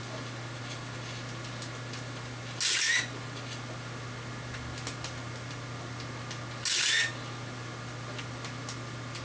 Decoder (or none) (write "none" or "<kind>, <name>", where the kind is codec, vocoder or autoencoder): none